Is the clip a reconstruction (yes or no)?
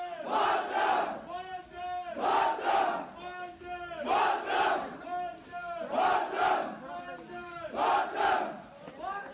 no